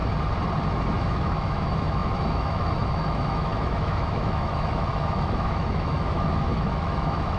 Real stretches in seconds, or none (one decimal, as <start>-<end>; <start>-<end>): 0.0-0.7